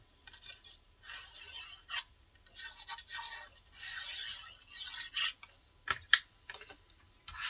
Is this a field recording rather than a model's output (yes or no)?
yes